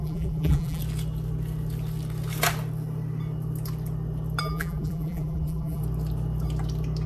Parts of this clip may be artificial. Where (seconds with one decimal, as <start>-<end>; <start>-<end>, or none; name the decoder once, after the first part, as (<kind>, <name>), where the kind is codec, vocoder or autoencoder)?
0.0-0.8 (vocoder, BigVGAN v2); 4.4-5.8